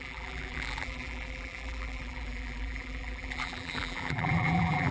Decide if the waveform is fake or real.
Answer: fake